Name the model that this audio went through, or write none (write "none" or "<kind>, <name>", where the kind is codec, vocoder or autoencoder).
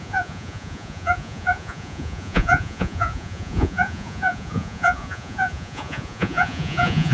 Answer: vocoder, Vocos